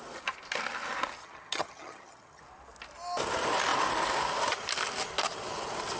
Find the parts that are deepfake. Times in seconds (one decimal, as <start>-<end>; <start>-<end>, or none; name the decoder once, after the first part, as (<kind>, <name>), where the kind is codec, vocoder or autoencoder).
1.2-2.4 (vocoder, HiFi-GAN)